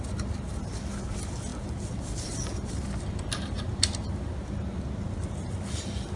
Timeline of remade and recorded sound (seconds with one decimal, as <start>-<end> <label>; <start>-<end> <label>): 0.0-1.5 recorded; 1.5-2.3 remade; 2.3-3.7 recorded; 3.7-4.9 remade; 4.9-6.2 recorded